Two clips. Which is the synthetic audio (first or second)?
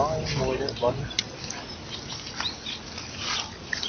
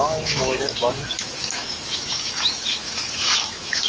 second